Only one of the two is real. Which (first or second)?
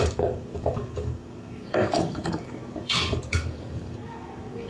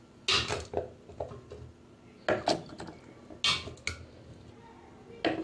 second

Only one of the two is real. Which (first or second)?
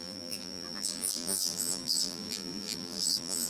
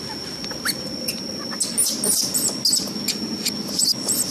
second